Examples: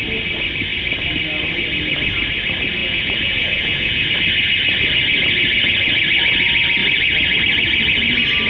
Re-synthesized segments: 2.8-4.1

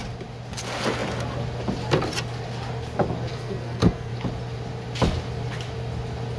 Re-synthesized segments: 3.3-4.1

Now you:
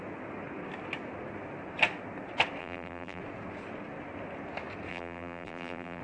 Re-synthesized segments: 2.6-3.2; 4.9-6.0

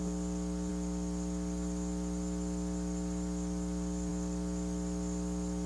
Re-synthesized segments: none

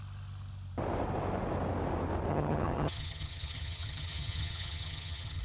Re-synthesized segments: 2.3-5.4

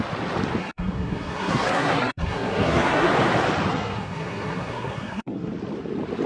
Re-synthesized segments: 0.6-3.1; 3.7-5.5

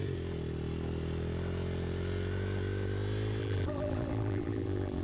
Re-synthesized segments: 3.4-5.0

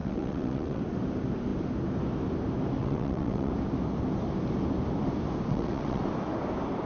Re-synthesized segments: 0.0-0.8; 2.8-3.5; 5.5-6.0